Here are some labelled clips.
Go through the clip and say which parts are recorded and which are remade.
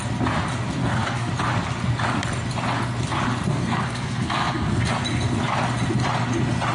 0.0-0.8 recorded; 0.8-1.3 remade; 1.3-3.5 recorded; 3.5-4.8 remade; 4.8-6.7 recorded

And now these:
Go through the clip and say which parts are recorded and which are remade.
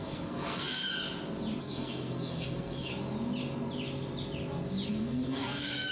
0.0-0.9 remade; 0.9-1.6 recorded; 1.6-2.9 remade; 2.9-4.9 recorded; 4.9-5.9 remade